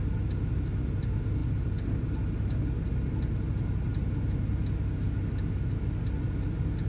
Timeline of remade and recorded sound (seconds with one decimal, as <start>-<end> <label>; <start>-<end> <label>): 0.0-6.9 recorded